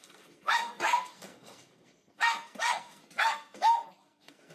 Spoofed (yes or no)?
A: yes